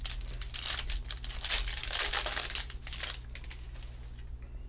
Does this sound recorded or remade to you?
recorded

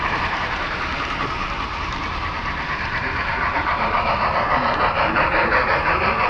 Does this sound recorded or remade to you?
remade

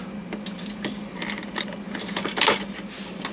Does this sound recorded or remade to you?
recorded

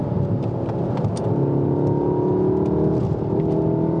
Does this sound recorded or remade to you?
recorded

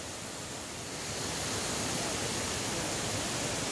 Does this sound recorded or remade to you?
recorded